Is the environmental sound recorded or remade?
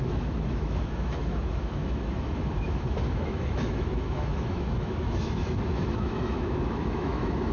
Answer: remade